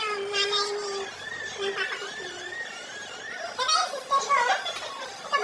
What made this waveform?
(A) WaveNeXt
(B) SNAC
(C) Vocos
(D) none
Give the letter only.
D